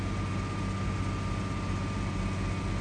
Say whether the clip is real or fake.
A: real